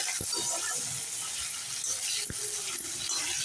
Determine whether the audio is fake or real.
real